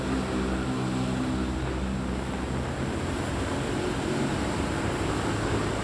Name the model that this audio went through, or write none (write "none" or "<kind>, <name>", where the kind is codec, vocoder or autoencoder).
none